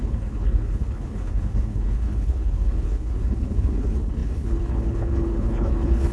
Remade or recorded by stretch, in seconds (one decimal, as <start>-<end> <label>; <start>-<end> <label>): 0.0-6.1 remade